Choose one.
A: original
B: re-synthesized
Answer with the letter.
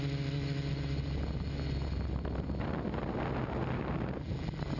A